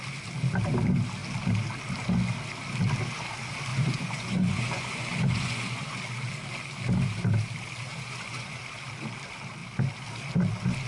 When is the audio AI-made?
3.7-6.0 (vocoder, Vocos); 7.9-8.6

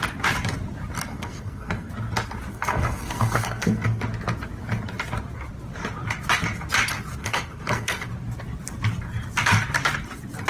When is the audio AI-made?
1.1-1.9 (codec, SNAC); 2.5-4.0; 7.2-8.1

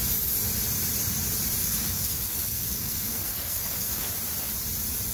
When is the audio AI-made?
1.6-4.1 (codec, SNAC)

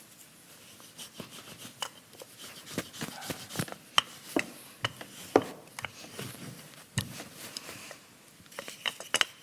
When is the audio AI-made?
5.5-7.4 (vocoder, BigVGAN v2)

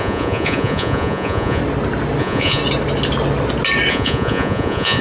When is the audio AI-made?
0.0-1.6 (vocoder, Vocos); 2.2-2.6; 3.9-5.0

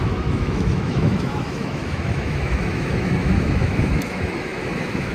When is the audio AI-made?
0.0-5.1 (autoencoder, DAC-VAE)

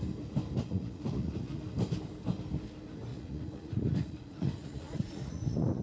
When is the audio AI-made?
0.6-1.6 (vocoder, Vocos); 3.1-5.8